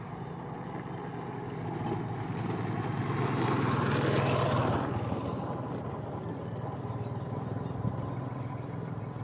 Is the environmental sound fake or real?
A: real